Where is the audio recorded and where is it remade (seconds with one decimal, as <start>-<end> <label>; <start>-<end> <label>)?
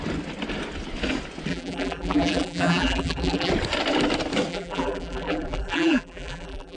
0.0-1.5 recorded; 1.5-3.5 remade; 3.5-4.5 recorded; 4.5-6.8 remade